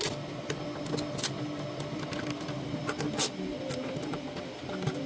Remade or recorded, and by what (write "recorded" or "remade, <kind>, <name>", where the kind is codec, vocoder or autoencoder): recorded